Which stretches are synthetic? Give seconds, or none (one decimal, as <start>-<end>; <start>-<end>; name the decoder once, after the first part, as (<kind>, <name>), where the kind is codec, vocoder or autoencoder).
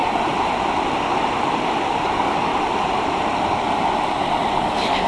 1.8-2.5 (codec, DAC); 4.5-5.1